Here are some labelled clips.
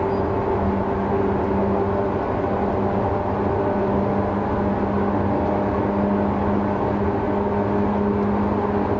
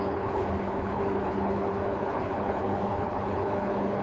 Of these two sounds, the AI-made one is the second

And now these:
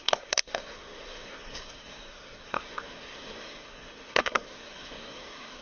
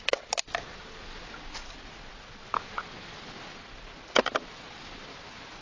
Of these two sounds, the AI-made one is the first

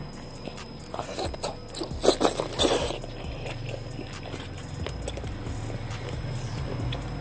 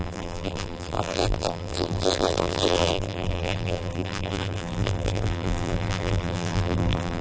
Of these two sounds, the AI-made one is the second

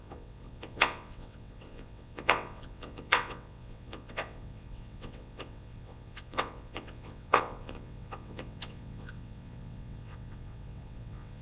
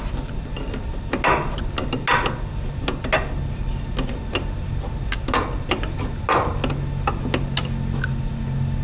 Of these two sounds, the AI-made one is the first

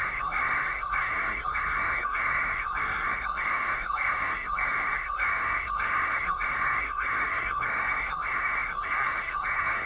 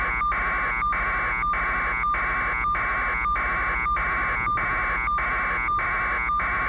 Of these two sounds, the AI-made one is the first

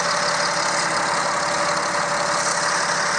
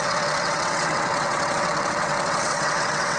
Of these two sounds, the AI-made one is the second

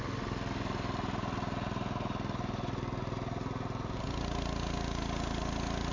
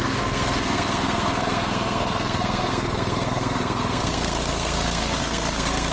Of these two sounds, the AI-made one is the second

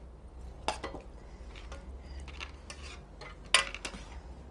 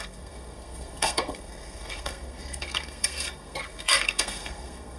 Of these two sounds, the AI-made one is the second